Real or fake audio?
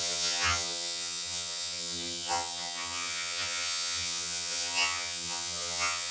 fake